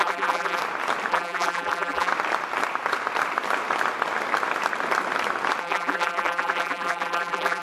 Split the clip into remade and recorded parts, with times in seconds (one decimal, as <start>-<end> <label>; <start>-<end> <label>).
0.0-0.6 remade; 0.6-1.1 recorded; 1.1-2.1 remade; 2.1-5.6 recorded; 5.6-7.6 remade